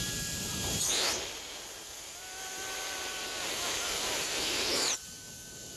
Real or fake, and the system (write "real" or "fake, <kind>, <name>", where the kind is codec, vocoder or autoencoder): fake, vocoder, BigVGAN v2